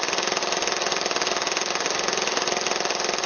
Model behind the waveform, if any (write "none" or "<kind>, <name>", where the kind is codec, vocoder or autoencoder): none